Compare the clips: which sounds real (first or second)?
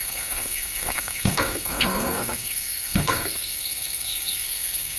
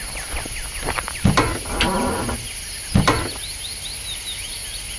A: second